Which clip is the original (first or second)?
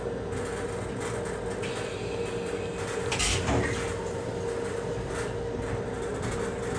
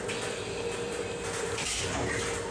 first